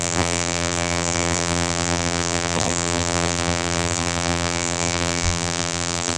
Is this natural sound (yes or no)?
no